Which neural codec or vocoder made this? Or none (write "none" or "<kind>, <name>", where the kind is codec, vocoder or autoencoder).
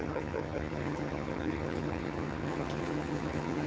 vocoder, HiFi-GAN